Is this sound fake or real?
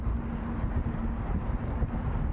real